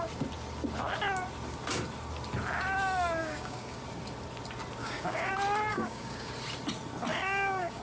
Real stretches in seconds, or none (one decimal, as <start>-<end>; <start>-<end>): 0.0-3.2; 3.8-4.8; 5.3-5.7; 6.3-7.1